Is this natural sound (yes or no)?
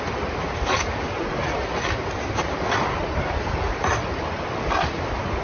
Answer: yes